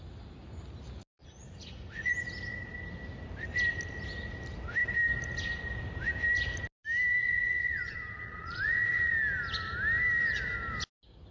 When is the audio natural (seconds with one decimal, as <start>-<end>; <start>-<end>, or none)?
0.0-1.2; 2.1-7.2; 9.1-11.3